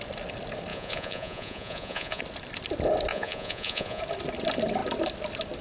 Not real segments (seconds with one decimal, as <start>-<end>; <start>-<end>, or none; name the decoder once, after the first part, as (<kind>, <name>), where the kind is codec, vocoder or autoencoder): 0.7-2.2 (vocoder, Vocos); 3.1-4.0